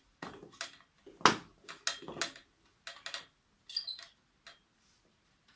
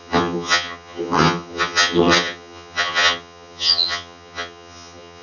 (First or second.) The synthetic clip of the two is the second